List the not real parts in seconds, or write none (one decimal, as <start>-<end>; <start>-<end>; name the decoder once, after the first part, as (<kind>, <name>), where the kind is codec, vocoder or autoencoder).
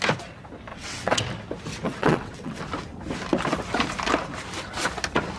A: 0.7-1.2 (vocoder, WaveNeXt); 1.7-2.6